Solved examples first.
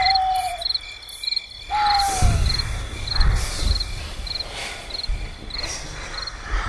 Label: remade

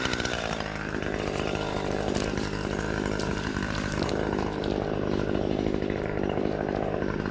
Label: remade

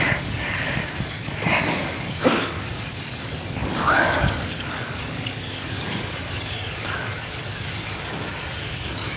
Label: remade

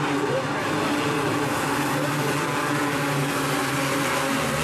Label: recorded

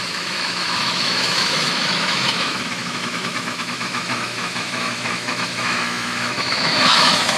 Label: remade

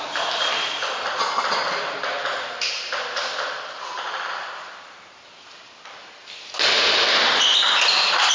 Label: recorded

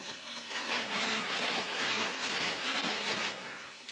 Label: remade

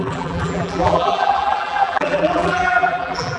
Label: remade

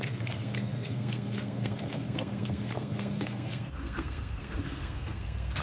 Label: remade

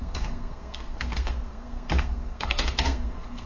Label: remade